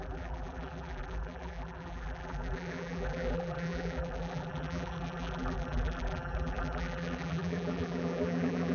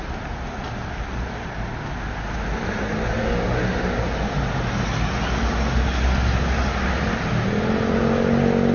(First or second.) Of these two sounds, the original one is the second